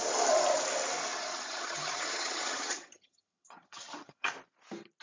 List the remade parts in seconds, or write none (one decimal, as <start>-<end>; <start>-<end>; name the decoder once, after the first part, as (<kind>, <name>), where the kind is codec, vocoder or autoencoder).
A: 1.3-4.3 (vocoder, HiFi-GAN)